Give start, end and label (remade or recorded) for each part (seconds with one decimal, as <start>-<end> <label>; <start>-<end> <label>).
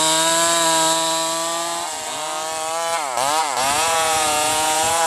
0.0-3.4 recorded; 3.4-5.1 remade